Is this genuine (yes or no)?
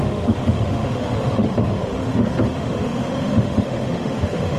no